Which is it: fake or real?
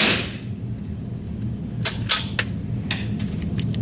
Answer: real